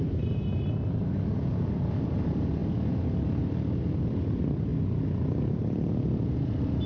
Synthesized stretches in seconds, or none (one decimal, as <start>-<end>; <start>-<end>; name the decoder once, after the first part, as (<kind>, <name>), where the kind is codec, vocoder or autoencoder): 0.0-2.6 (vocoder, BigVGAN v2); 3.4-4.7; 5.4-6.9